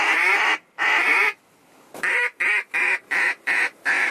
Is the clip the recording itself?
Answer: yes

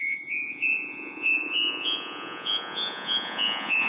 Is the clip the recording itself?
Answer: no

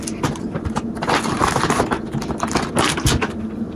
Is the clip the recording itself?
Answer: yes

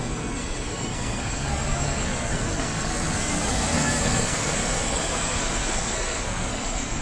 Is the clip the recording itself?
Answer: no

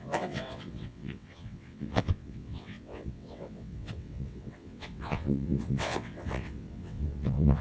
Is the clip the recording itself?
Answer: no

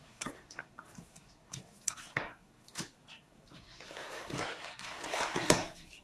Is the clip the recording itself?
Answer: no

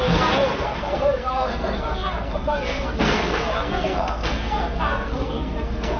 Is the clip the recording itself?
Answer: no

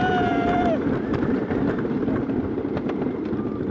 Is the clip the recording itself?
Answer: no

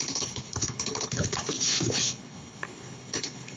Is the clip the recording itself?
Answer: no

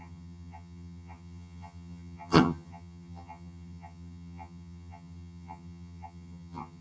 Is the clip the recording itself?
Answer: no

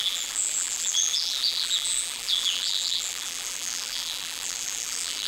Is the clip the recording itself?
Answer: no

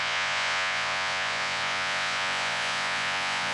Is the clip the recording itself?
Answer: no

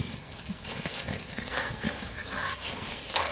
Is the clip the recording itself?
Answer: no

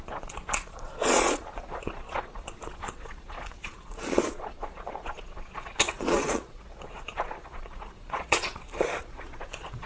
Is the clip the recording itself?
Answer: no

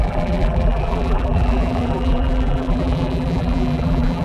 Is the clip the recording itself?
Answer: no